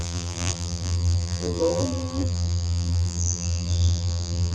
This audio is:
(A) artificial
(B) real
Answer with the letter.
A